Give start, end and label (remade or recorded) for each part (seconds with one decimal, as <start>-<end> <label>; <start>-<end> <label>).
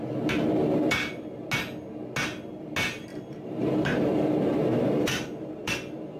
0.0-3.1 recorded; 3.1-5.7 remade; 5.7-6.2 recorded